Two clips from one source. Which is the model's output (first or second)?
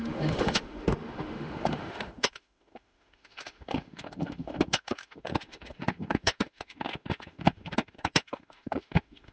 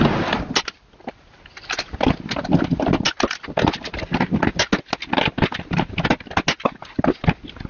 first